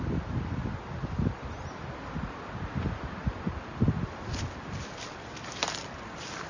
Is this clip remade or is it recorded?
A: recorded